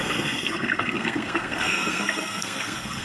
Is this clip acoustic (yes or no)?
no